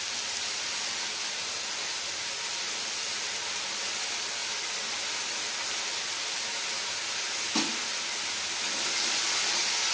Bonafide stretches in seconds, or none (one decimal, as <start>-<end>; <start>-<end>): 0.0-9.9